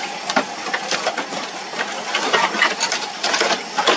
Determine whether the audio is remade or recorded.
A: recorded